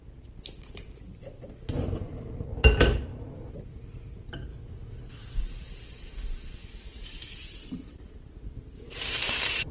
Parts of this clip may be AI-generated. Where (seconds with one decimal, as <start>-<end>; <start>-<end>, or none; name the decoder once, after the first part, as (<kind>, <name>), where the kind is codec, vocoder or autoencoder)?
0.0-2.6 (vocoder, BigVGAN v2); 3.3-4.5; 5.4-9.7